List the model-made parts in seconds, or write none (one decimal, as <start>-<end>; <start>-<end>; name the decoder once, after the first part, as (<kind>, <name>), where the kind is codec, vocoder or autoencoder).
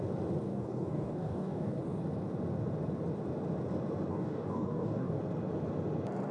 0.5-1.8 (codec, DAC); 4.1-5.2